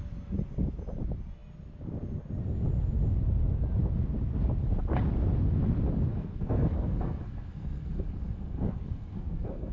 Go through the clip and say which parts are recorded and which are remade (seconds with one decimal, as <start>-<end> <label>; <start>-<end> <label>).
0.0-6.1 recorded; 6.1-9.7 remade